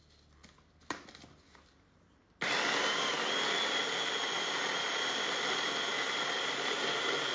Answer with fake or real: real